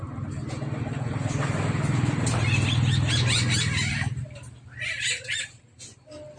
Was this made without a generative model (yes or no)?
yes